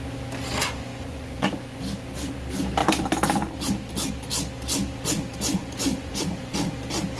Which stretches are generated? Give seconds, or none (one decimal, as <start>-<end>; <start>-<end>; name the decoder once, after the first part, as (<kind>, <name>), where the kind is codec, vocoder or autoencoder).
0.6-1.8 (vocoder, Vocos); 5.6-6.5